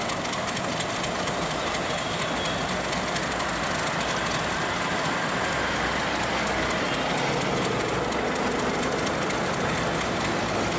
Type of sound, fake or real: real